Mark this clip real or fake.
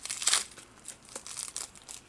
fake